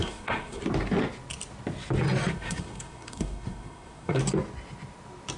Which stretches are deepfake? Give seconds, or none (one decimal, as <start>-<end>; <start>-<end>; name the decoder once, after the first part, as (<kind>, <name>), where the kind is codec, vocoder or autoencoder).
0.0-0.6 (codec, SNAC); 2.3-4.2

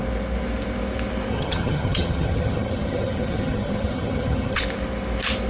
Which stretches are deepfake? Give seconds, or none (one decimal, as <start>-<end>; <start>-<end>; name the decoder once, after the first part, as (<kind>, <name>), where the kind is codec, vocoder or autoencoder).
1.3-4.6 (vocoder, HiFi-GAN)

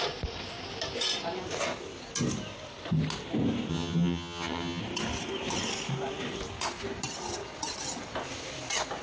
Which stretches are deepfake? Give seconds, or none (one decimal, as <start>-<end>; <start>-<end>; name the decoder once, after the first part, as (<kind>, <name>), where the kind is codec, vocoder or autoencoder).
3.7-4.8 (vocoder, HiFi-GAN)

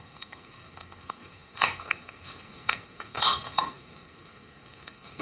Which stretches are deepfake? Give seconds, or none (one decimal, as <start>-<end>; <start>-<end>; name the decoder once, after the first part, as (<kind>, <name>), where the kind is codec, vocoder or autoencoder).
0.0-5.2 (codec, SNAC)

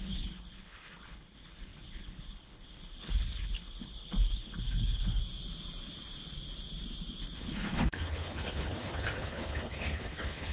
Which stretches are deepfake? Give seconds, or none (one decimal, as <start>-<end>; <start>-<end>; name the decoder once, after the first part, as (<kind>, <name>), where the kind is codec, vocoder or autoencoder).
0.0-5.2 (codec, HILCodec); 7.2-10.5

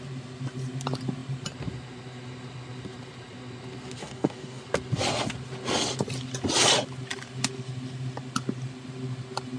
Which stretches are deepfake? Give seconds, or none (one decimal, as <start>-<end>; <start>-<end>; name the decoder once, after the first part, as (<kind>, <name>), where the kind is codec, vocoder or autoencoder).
4.0-4.6 (codec, DAC)

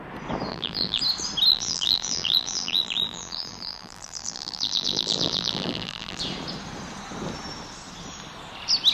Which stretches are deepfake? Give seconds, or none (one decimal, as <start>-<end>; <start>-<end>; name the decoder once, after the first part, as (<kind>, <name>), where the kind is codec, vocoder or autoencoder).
0.5-1.0 (vocoder, BigVGAN v2); 1.5-6.2

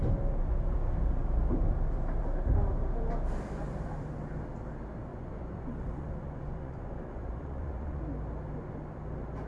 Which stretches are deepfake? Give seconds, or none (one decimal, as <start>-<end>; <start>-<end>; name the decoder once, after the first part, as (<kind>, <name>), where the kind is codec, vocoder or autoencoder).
5.1-8.0 (vocoder, Vocos)